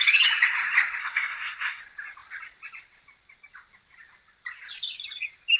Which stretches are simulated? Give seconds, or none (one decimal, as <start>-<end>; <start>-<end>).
1.0-1.8